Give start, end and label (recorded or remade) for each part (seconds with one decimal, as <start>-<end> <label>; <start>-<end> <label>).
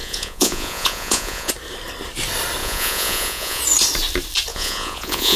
0.0-1.5 remade; 1.5-2.6 recorded; 2.6-3.6 remade; 3.6-4.5 recorded; 4.5-5.4 remade